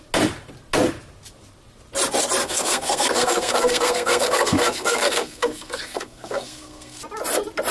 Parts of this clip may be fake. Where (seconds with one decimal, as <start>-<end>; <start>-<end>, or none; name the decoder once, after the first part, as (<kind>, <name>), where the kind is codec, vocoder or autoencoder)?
2.4-7.0 (codec, SNAC)